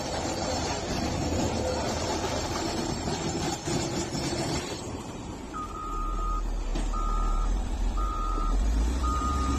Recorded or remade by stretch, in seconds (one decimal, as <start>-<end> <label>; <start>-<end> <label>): 0.0-6.7 remade; 6.7-7.3 recorded; 7.3-9.6 remade